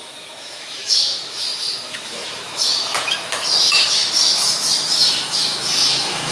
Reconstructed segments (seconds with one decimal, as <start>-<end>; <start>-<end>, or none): 0.0-6.3

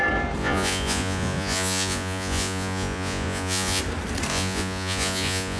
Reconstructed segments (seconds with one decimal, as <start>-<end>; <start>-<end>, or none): 0.4-3.8; 4.3-5.6

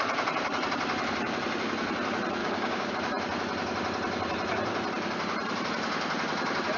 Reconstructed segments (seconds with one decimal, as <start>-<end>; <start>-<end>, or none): 2.4-2.9

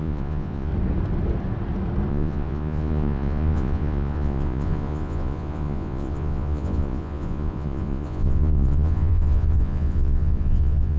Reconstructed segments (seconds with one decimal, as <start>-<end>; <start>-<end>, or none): 0.0-0.7; 2.1-11.0

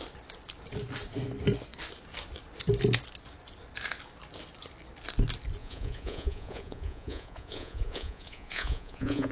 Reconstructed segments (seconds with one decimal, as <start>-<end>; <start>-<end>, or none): 5.6-9.3

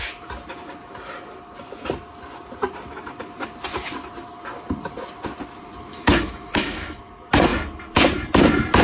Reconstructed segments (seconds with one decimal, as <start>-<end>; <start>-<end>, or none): 5.9-7.0

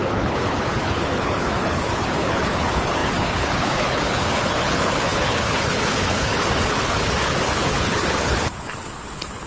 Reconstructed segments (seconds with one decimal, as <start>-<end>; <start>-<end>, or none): 0.0-9.5

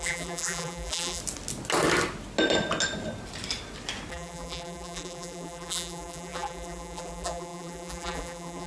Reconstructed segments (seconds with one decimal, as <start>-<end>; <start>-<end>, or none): 0.0-1.2; 4.1-8.7